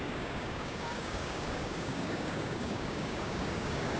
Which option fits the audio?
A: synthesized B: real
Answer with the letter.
A